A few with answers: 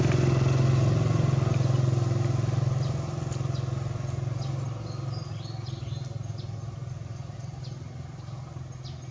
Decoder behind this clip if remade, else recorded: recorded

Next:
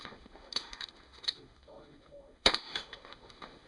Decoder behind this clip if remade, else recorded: remade, autoencoder, DAC-VAE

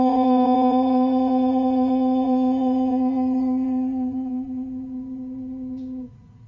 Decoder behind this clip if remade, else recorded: remade, vocoder, Vocos